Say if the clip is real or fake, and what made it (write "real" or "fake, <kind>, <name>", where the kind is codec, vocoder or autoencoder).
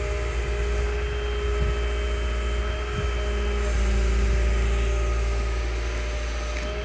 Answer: real